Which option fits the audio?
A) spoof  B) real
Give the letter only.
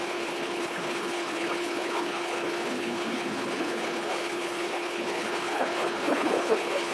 A